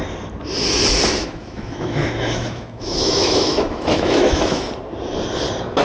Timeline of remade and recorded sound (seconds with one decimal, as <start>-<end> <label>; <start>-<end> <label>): 0.0-1.2 recorded; 1.2-4.7 remade; 4.7-5.8 recorded